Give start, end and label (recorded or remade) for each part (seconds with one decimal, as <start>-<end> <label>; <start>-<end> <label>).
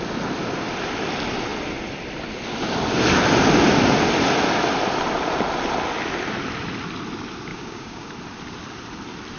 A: 0.0-7.5 recorded; 7.5-8.1 remade; 8.1-9.4 recorded